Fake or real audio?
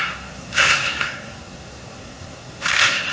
fake